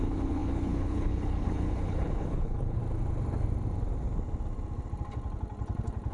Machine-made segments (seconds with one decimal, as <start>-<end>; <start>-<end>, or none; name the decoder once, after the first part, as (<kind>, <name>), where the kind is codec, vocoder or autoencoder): 0.0-2.8 (codec, HILCodec)